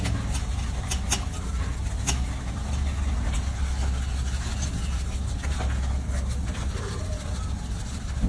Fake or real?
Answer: real